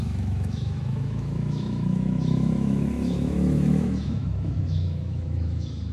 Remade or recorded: remade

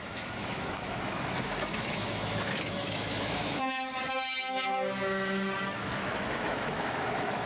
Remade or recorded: remade